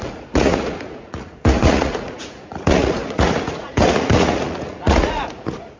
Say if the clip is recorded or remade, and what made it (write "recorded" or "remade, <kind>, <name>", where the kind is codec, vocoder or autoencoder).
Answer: remade, vocoder, Vocos